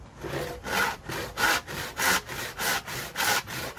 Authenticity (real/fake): fake